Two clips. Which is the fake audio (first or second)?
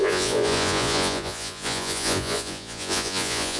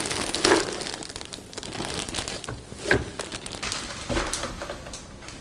first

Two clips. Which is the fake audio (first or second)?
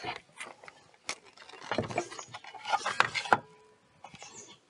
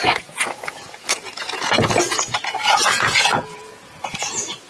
second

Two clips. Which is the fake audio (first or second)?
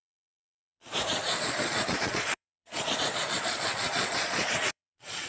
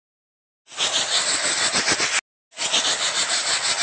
first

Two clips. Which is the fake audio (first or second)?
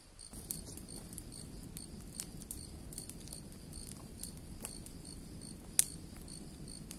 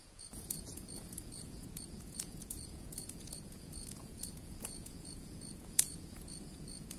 second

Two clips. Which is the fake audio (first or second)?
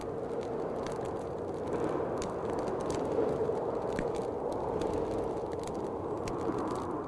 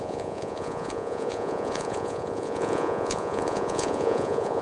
second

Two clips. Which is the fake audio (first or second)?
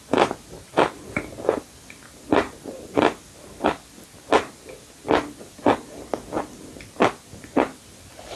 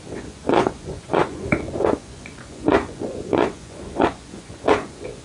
second